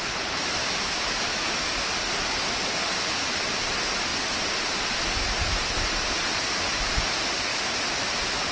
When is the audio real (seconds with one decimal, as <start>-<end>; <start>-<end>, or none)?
0.0-0.6; 1.6-8.5